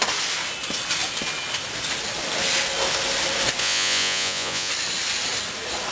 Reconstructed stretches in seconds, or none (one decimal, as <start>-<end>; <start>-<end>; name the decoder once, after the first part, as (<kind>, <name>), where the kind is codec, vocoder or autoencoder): 3.6-4.7 (vocoder, Vocos)